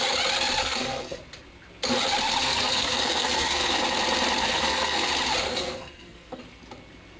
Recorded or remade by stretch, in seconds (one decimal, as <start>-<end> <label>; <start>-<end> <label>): 0.0-0.6 recorded; 0.6-1.2 remade; 1.2-2.4 recorded; 2.4-3.8 remade; 3.8-4.4 recorded; 4.4-5.1 remade; 5.1-5.5 recorded; 5.5-6.4 remade; 6.4-7.2 recorded